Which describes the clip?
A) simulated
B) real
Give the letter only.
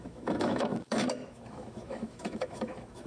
A